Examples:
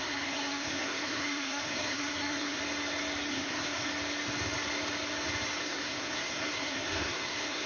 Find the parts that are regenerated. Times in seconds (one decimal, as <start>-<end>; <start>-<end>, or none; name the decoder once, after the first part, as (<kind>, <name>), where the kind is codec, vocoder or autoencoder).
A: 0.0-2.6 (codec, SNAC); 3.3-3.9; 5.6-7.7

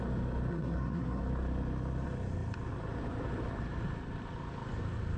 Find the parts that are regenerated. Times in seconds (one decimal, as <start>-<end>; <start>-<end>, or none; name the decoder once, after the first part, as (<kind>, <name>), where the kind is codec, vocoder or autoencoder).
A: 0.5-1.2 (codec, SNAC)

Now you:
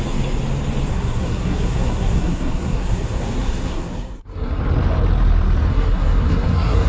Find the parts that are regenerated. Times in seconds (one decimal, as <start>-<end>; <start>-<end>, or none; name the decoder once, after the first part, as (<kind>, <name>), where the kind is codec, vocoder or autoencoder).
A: 0.9-4.6 (codec, SNAC); 5.7-6.9